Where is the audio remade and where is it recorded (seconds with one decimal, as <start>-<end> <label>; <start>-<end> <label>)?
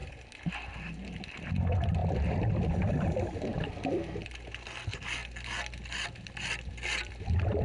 0.0-2.0 recorded; 2.0-2.9 remade; 2.9-7.6 recorded